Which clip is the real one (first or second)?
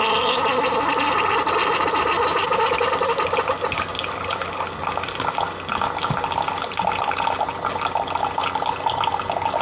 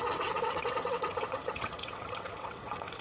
first